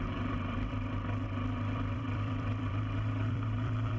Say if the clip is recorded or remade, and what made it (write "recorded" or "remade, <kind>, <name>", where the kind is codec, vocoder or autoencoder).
remade, vocoder, BigVGAN v2